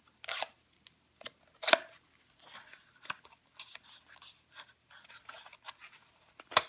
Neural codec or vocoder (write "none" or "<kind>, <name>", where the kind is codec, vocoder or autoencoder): none